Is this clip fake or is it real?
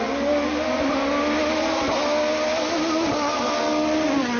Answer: real